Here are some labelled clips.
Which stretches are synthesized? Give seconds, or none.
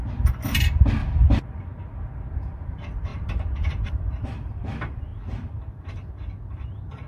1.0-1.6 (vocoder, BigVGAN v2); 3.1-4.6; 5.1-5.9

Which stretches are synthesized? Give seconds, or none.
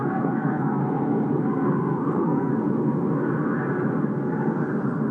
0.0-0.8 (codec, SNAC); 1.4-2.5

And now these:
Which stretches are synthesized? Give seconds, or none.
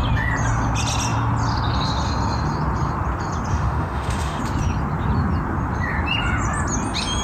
3.5-4.4 (autoencoder, DAC-VAE)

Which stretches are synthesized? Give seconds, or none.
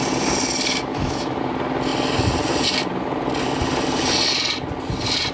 0.9-1.4 (autoencoder, DAC-VAE)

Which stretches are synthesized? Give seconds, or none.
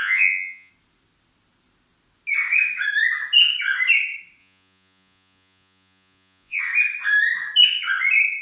0.0-0.7 (vocoder, Vocos); 4.4-6.6